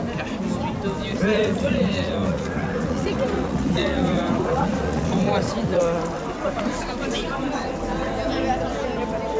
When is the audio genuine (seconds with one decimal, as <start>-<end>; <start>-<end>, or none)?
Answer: 0.0-1.1; 5.8-9.4